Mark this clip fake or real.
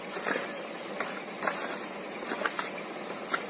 real